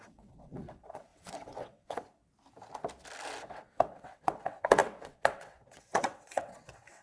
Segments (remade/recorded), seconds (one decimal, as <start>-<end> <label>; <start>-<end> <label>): 0.0-2.2 remade; 2.2-3.4 recorded; 3.4-7.0 remade